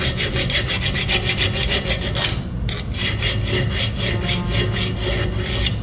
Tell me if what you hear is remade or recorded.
recorded